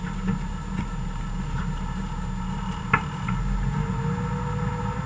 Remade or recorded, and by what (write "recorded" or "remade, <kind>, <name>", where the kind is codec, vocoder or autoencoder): recorded